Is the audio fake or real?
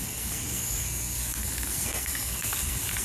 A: fake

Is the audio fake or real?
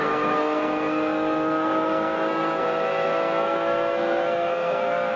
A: fake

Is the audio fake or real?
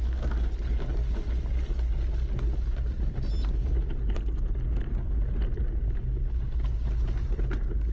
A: real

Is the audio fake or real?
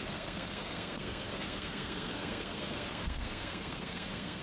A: fake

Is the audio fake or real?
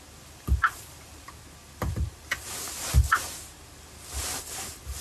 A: real